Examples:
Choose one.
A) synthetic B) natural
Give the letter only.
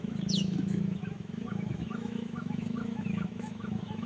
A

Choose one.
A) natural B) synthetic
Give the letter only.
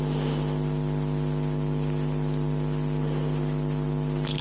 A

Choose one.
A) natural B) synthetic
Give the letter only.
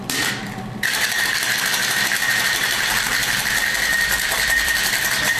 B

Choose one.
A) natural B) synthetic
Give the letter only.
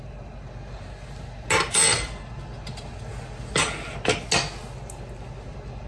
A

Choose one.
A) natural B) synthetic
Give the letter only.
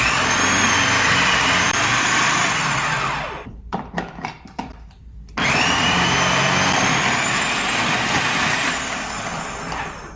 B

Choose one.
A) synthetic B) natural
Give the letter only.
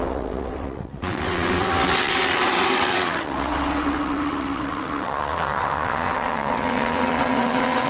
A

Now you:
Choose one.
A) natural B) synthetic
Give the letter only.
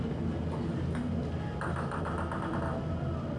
A